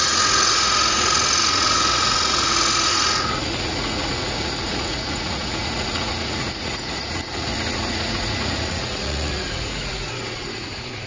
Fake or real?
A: fake